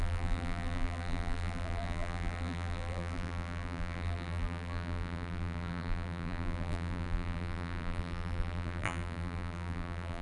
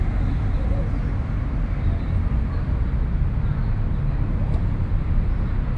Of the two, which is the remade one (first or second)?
first